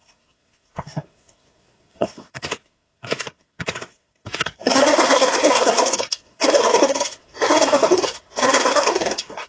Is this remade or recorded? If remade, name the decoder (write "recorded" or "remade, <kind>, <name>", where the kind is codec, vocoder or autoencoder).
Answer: remade, codec, SNAC